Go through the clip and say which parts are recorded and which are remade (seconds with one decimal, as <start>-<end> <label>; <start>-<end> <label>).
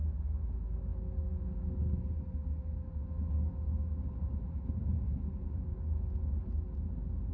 0.0-4.0 recorded; 4.0-5.8 remade; 5.8-7.3 recorded